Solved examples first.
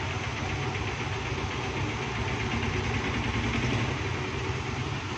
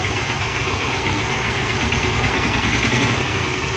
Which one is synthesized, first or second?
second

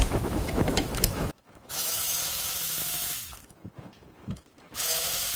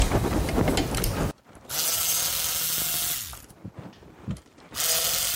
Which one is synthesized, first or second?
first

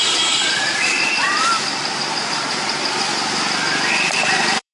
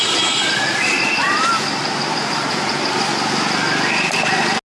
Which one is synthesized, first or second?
first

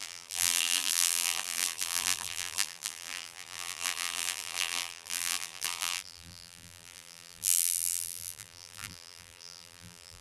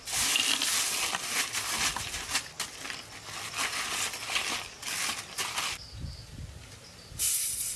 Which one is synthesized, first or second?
first